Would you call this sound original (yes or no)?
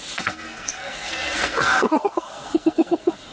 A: no